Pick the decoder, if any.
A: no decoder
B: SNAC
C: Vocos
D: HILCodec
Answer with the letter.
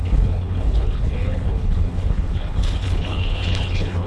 D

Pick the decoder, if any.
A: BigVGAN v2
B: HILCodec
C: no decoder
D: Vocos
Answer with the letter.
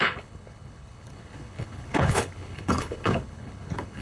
B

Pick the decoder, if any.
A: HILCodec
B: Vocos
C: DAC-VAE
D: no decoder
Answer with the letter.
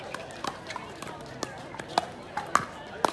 D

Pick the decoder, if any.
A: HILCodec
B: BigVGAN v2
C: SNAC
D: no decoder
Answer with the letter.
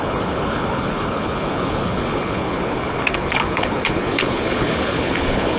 A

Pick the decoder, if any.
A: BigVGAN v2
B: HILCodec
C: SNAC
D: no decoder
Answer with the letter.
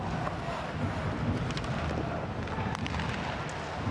D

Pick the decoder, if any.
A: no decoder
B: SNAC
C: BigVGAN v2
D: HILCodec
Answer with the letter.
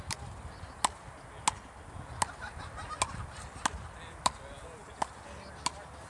A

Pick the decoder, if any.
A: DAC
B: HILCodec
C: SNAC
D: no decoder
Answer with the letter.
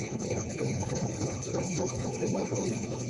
B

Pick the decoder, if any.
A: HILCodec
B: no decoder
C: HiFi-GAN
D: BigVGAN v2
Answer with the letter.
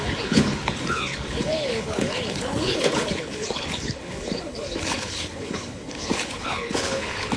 A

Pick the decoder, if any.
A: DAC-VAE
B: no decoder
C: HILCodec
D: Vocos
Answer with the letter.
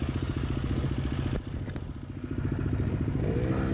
B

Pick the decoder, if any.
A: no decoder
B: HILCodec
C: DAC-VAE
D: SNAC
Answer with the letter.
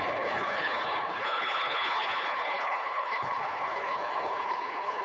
B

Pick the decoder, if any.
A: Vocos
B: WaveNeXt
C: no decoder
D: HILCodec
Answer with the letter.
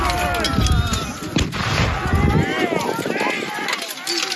C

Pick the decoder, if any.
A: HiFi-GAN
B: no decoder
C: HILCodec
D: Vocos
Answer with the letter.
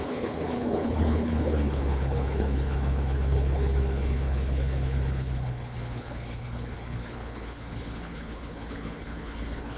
C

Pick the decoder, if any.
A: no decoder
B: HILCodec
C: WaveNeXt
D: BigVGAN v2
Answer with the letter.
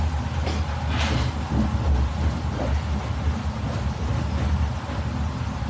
A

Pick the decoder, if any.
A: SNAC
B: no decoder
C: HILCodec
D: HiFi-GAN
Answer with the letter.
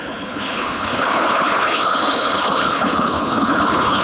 C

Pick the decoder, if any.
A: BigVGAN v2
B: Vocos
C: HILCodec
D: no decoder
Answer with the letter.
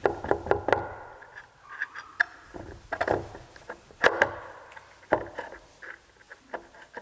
D